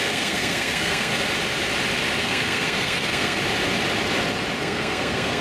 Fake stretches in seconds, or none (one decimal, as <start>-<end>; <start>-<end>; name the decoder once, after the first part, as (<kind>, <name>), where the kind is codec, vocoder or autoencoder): 0.0-1.1 (codec, SNAC); 2.2-3.4; 4.6-5.4